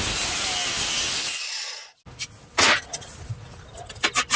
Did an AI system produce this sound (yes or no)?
no